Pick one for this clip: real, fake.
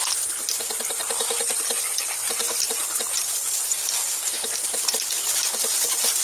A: real